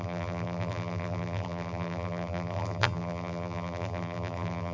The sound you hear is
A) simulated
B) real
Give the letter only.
A